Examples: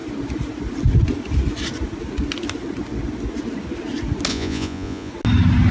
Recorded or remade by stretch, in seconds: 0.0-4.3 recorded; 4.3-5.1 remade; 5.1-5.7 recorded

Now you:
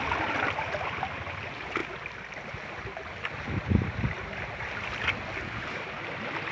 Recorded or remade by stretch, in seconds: 0.0-6.5 recorded